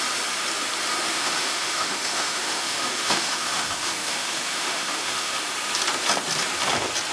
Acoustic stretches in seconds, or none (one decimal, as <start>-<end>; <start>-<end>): 0.0-1.1; 5.4-7.1